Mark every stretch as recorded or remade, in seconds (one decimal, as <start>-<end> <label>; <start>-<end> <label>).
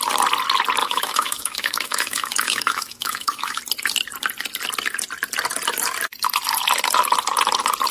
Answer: 0.0-0.8 recorded; 0.8-3.6 remade; 3.6-7.9 recorded